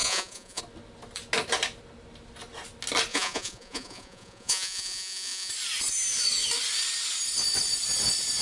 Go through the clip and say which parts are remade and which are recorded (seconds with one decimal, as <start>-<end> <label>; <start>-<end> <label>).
0.0-0.6 remade; 0.6-3.1 recorded; 3.1-5.5 remade; 5.5-8.4 recorded